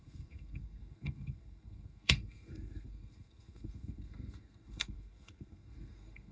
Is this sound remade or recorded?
remade